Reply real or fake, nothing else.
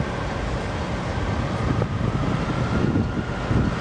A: real